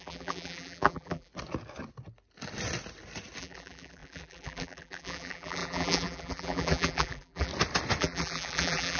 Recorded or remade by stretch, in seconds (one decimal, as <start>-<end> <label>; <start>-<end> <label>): 0.0-1.3 remade; 1.3-3.4 recorded; 3.4-7.5 remade; 7.5-8.0 recorded; 8.0-9.0 remade